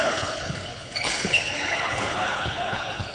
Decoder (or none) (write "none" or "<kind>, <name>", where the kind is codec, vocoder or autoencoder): codec, HILCodec